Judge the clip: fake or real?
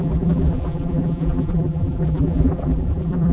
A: fake